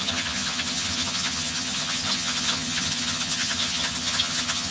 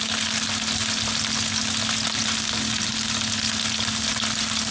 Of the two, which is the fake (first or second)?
first